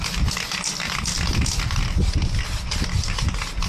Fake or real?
real